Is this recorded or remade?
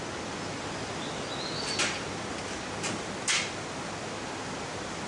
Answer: recorded